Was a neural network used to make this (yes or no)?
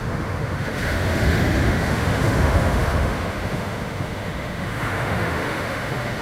yes